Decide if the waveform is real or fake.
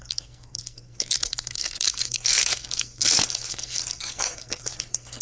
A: fake